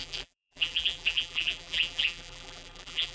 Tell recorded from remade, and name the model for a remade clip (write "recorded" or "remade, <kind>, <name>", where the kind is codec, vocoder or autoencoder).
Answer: remade, vocoder, BigVGAN v2